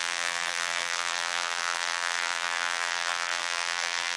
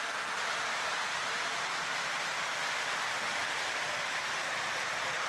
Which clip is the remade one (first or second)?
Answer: first